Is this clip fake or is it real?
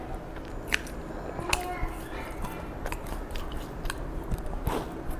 real